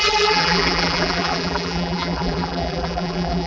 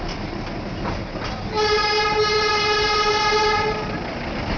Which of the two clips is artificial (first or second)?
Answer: first